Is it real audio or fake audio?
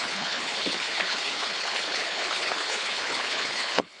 fake